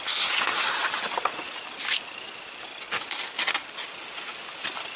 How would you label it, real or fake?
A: real